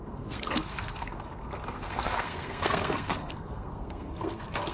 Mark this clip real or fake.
fake